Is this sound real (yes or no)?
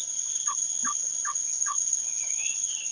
no